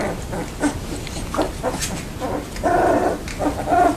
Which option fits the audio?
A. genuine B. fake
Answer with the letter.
A